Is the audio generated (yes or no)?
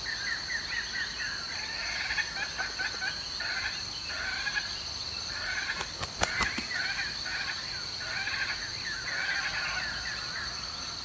no